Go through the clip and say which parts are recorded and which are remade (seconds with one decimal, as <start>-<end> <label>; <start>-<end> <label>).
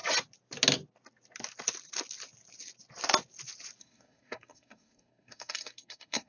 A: 0.0-3.8 recorded; 3.8-6.3 remade